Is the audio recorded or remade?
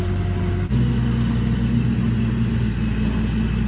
recorded